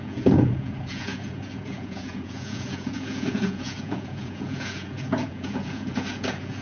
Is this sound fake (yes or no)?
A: yes